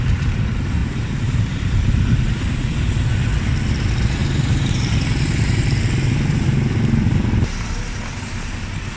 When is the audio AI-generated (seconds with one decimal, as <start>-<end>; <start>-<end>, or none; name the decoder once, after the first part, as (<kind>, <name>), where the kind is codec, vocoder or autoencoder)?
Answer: 0.8-1.7 (vocoder, BigVGAN v2); 4.2-5.8